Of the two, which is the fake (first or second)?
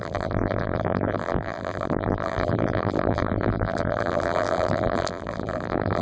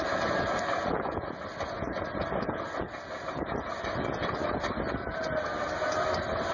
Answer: first